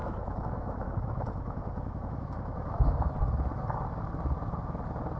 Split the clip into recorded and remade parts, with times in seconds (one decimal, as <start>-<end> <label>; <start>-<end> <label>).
0.0-3.1 remade; 3.1-5.2 recorded